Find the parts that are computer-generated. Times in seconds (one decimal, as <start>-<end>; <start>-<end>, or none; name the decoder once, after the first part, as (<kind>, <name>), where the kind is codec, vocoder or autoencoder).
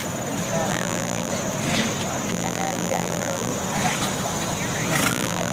0.7-1.3 (vocoder, BigVGAN v2); 2.3-3.5; 5.1-5.5